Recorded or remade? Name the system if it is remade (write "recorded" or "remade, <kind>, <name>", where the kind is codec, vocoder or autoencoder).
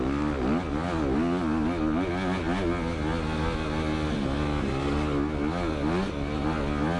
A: recorded